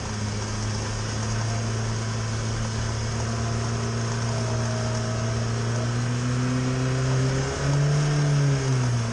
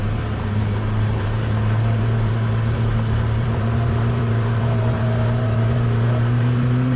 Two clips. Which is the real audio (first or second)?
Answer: first